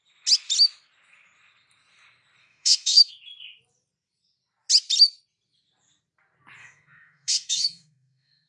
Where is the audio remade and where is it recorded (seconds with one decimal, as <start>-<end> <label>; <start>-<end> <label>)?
0.0-2.4 recorded; 2.4-3.1 remade; 3.1-6.6 recorded; 6.6-8.5 remade